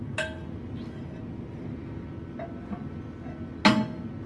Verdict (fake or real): real